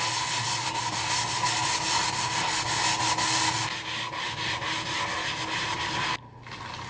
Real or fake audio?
real